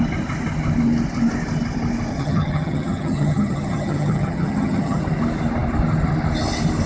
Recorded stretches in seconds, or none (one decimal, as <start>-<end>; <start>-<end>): 0.0-2.1; 5.0-6.9